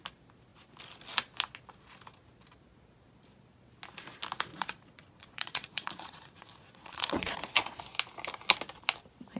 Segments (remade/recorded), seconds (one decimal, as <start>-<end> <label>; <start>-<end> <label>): 0.0-4.5 recorded; 4.5-7.8 remade; 7.8-9.4 recorded